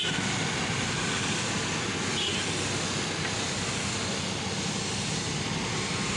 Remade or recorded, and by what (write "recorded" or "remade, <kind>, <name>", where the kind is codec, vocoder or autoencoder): recorded